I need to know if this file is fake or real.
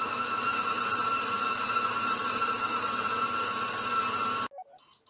real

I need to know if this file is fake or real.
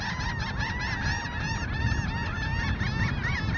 real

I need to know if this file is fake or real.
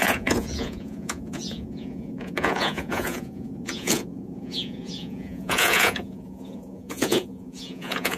fake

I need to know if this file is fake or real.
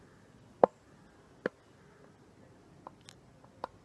real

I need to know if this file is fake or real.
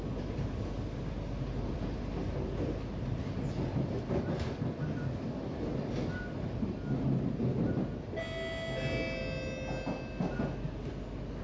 real